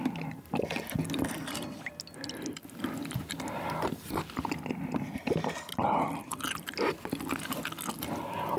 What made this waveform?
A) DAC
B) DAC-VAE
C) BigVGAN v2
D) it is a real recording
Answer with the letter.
D